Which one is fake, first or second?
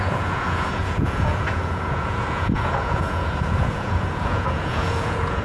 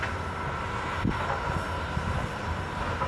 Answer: first